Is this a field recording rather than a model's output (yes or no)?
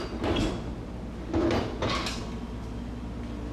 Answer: yes